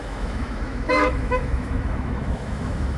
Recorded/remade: remade